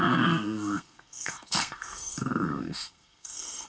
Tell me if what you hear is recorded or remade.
remade